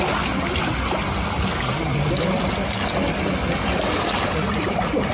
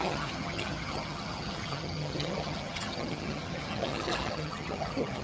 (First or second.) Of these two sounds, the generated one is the second